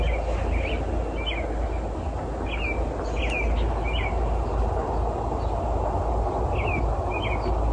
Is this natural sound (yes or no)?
yes